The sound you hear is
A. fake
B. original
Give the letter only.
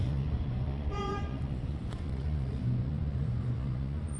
A